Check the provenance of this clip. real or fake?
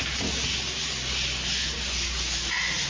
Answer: real